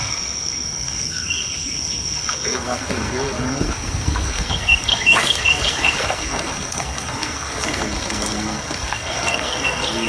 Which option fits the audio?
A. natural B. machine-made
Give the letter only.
B